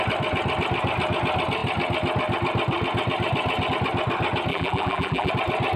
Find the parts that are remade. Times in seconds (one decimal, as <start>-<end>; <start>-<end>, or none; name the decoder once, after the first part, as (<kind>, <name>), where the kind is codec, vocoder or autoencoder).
4.5-5.3 (vocoder, BigVGAN v2)